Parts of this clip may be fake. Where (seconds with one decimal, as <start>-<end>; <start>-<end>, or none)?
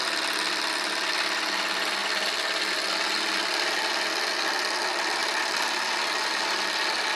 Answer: none